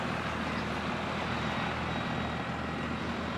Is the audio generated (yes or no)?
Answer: no